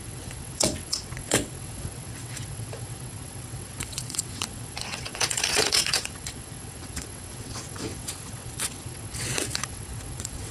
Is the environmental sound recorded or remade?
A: remade